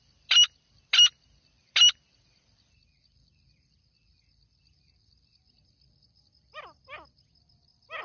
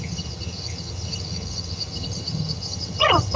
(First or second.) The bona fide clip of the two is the first